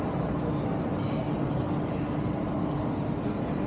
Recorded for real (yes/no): yes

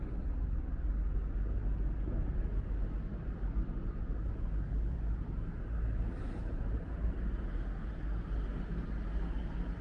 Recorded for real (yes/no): yes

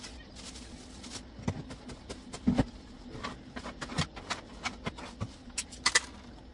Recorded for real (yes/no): yes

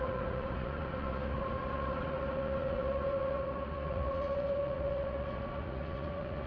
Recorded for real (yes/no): no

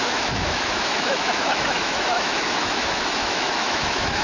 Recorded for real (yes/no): no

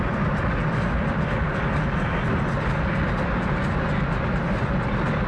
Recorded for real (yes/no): yes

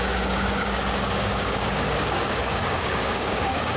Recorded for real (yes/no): no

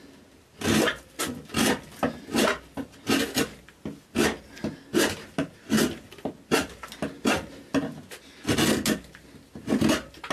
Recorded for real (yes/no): yes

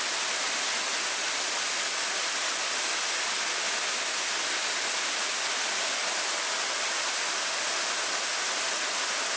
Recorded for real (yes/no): yes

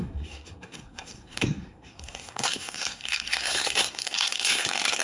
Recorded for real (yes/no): no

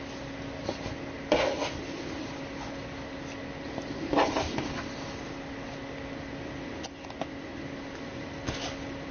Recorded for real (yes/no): yes